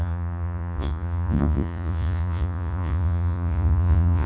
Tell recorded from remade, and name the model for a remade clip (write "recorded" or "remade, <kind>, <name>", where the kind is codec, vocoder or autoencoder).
remade, vocoder, Vocos